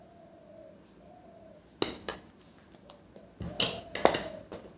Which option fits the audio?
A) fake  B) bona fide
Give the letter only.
B